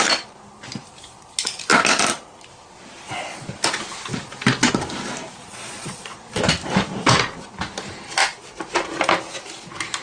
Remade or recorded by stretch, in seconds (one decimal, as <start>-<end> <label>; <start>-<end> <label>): 0.0-5.4 recorded; 5.4-6.4 remade; 6.4-10.0 recorded